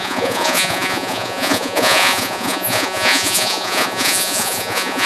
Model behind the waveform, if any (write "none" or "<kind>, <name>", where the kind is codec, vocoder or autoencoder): vocoder, Vocos